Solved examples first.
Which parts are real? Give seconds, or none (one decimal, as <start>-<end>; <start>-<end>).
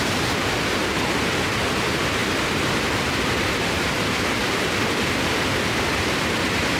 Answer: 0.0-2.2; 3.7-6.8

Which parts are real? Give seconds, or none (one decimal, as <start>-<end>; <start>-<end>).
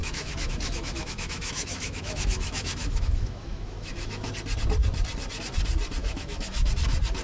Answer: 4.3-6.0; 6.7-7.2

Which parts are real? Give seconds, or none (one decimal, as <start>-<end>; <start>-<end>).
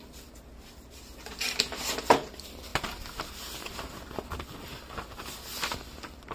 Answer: 0.0-6.3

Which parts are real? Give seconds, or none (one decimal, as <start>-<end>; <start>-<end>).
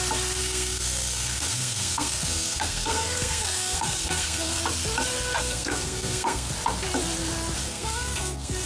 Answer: 0.0-0.4; 4.6-5.4; 6.5-7.6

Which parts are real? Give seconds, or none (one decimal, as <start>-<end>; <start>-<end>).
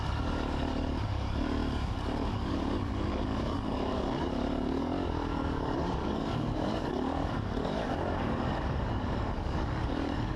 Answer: none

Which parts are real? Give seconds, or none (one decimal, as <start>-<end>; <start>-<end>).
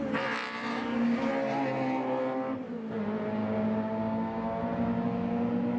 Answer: 0.0-0.7; 1.3-3.4; 4.6-5.8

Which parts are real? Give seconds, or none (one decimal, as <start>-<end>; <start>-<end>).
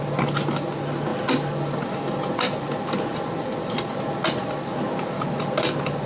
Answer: 0.0-6.1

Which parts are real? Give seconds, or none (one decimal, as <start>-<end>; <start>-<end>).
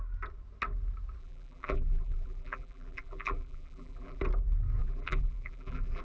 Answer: 0.0-1.2; 4.2-4.8